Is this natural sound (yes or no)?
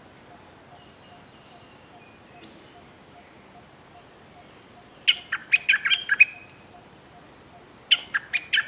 yes